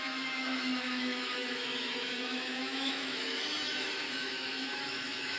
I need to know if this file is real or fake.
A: fake